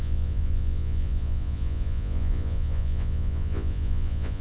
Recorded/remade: remade